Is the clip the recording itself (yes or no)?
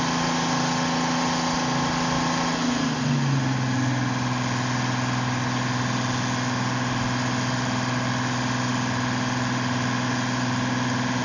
yes